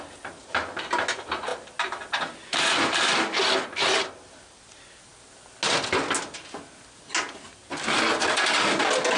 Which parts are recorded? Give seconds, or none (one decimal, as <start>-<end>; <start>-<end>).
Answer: 0.0-9.2